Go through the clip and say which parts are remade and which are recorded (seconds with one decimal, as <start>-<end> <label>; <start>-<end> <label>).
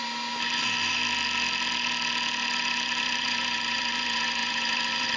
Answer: 0.0-1.0 remade; 1.0-3.0 recorded; 3.0-5.2 remade